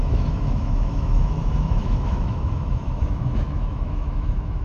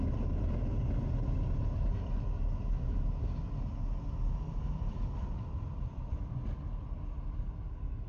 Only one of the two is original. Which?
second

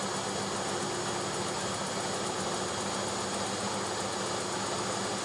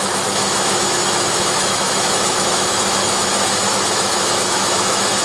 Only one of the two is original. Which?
first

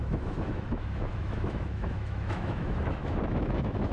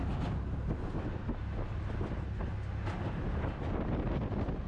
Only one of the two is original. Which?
second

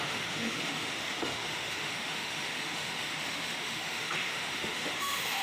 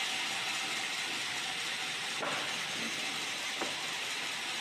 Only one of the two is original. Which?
second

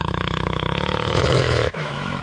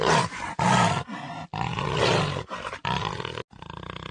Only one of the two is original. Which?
second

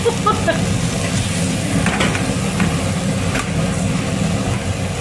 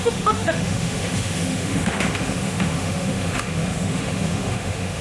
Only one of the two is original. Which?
first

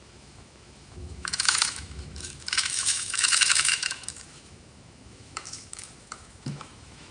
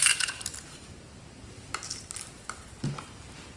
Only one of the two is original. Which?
second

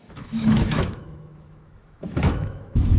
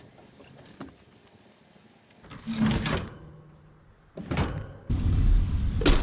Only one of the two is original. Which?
second